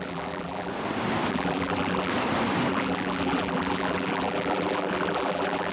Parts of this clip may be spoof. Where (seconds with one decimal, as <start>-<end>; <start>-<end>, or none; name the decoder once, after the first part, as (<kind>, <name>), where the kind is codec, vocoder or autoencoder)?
0.0-0.7 (vocoder, BigVGAN v2); 1.3-2.1; 2.7-5.7

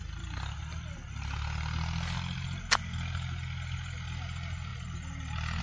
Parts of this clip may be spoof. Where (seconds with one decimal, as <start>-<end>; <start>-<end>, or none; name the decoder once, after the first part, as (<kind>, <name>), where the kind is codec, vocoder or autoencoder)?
none